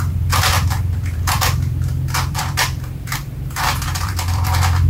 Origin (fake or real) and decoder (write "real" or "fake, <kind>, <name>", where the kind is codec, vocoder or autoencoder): fake, vocoder, BigVGAN v2